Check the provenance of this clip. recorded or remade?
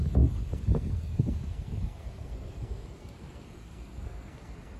remade